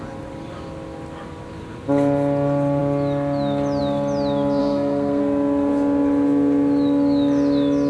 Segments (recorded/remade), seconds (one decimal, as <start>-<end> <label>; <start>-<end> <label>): 0.0-4.6 recorded; 4.6-5.2 remade; 5.2-7.9 recorded